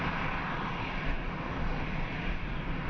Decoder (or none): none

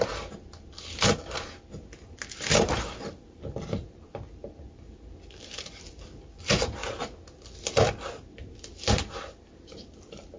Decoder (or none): none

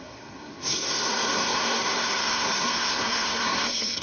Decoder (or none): codec, SNAC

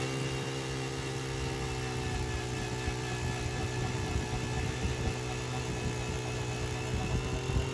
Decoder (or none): none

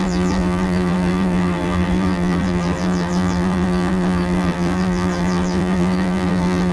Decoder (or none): vocoder, BigVGAN v2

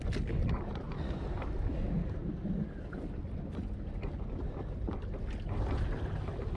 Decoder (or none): none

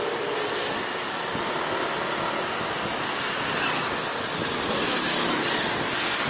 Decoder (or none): none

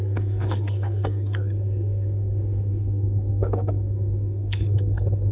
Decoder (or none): codec, SNAC